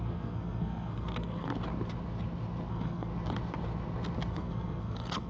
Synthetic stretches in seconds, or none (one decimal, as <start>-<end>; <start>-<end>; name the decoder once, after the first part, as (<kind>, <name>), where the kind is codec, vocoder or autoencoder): 0.0-1.5 (codec, SNAC); 2.7-3.1; 4.3-5.3